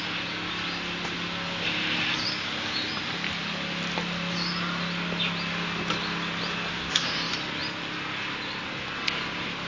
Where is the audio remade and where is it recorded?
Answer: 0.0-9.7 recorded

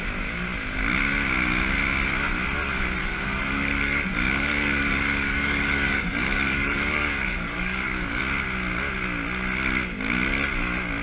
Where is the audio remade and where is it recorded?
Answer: 0.0-3.0 recorded; 3.0-8.2 remade; 8.2-11.0 recorded

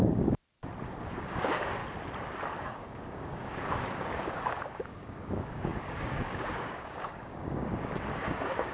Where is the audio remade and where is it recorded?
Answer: 0.0-0.4 remade; 0.4-1.2 recorded; 1.2-1.8 remade; 1.8-2.6 recorded; 2.6-8.7 remade

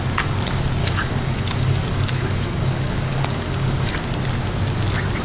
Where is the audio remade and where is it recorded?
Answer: 0.0-0.8 recorded; 0.8-3.9 remade; 3.9-5.2 recorded